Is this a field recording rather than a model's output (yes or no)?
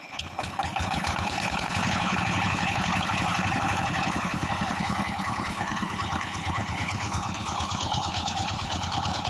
no